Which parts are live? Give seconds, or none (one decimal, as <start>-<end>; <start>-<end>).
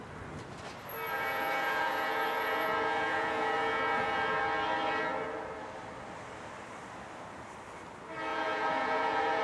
0.0-1.1; 4.4-8.3